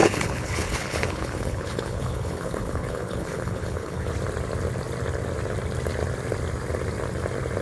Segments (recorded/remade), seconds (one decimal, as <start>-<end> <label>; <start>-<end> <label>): 0.0-4.1 remade; 4.1-7.6 recorded